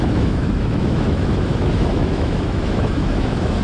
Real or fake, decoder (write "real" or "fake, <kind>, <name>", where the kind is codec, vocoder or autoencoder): fake, autoencoder, DAC-VAE